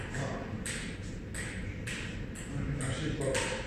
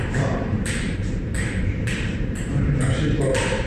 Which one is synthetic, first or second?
second